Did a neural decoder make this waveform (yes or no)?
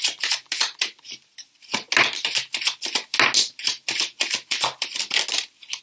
no